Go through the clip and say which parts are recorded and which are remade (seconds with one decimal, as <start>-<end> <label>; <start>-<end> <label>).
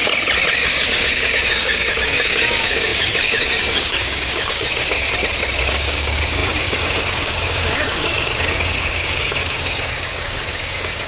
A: 0.0-0.5 recorded; 0.5-5.0 remade; 5.0-5.6 recorded; 5.6-11.1 remade